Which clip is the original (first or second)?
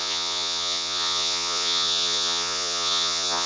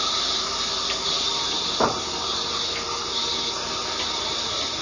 second